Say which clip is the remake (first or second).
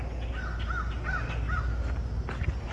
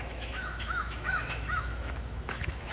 second